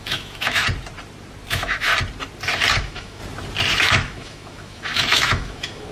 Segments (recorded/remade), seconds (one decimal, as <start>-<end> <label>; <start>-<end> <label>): 0.0-0.6 remade; 0.6-1.5 recorded; 1.5-1.9 remade; 1.9-2.8 recorded; 2.8-3.2 remade; 3.2-3.8 recorded; 3.8-5.9 remade

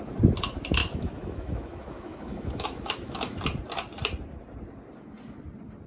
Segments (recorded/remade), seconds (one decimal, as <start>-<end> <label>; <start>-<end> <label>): 0.0-0.8 recorded; 0.8-3.4 remade; 3.4-5.9 recorded

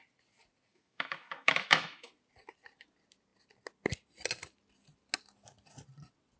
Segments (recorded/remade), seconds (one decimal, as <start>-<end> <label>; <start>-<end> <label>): 0.0-0.7 recorded; 0.7-2.1 remade; 2.1-6.4 recorded

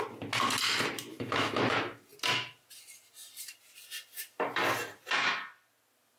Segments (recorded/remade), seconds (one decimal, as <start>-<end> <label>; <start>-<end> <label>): 0.0-1.1 recorded; 1.1-1.7 remade; 1.7-6.2 recorded